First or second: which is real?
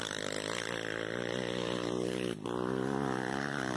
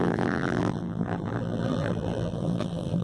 first